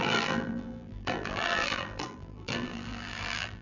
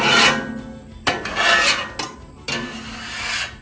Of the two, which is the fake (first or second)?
first